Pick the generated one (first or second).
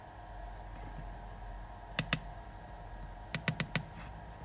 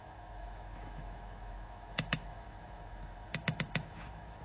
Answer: second